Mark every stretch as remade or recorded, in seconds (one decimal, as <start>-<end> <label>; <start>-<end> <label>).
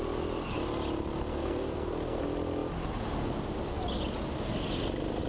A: 0.0-1.3 recorded; 1.3-2.2 remade; 2.2-5.3 recorded